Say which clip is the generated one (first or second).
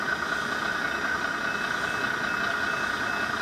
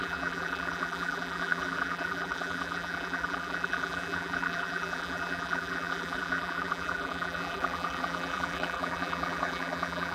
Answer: second